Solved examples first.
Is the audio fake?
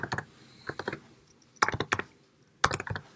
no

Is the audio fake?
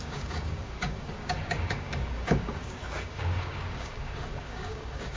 yes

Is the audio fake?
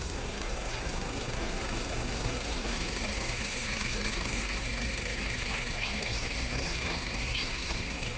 yes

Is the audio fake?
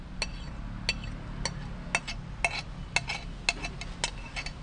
no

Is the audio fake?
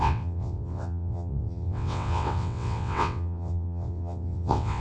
yes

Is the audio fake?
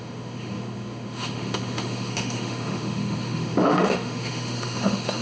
yes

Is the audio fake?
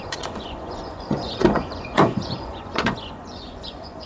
yes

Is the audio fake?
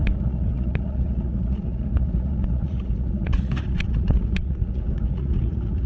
yes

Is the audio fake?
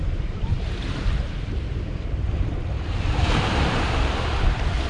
yes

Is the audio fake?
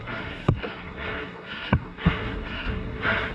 yes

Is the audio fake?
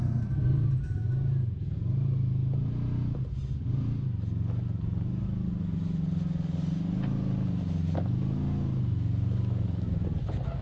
no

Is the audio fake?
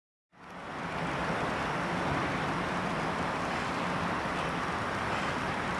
no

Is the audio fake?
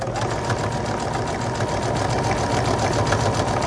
no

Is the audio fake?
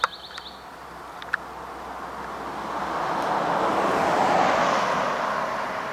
no